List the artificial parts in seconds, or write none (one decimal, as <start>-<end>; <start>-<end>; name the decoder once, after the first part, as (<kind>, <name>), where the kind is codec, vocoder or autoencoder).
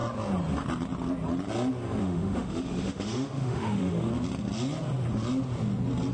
2.0-4.1 (autoencoder, DAC-VAE)